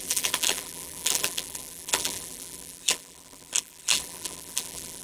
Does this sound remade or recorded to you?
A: remade